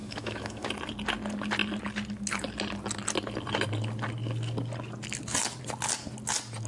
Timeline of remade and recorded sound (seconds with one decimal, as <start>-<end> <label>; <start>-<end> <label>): 0.0-0.7 remade; 0.7-6.7 recorded